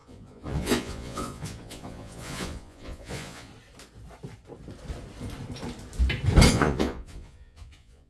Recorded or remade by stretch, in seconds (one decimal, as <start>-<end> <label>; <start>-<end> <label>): 0.0-3.5 remade; 3.5-6.5 recorded; 6.5-8.1 remade